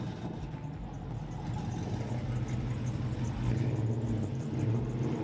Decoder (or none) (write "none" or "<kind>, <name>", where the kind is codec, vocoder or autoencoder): none